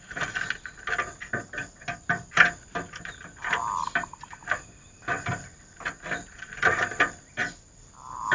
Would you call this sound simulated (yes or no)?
no